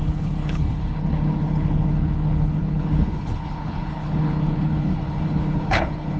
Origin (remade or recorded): remade